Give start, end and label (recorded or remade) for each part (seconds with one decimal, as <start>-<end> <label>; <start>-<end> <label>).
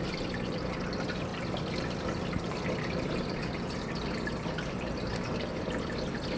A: 0.0-1.3 recorded; 1.3-5.0 remade; 5.0-6.4 recorded